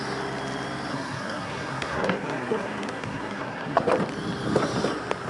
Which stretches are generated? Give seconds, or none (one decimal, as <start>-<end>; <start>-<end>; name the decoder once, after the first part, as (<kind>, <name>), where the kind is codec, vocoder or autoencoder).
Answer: 0.9-3.9 (codec, SNAC)